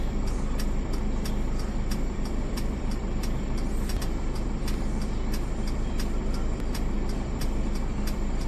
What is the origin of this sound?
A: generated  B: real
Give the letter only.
A